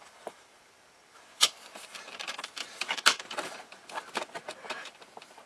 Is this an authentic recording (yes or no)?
no